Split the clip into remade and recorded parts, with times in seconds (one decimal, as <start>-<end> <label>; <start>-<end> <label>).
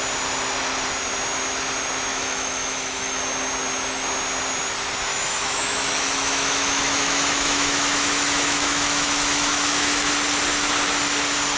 0.0-2.1 recorded; 2.1-3.2 remade; 3.2-5.1 recorded; 5.1-10.1 remade; 10.1-11.6 recorded